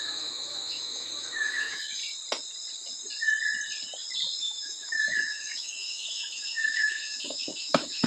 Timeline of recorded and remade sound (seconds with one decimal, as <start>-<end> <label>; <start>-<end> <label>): 0.0-2.0 remade; 2.0-4.4 recorded; 4.4-8.1 remade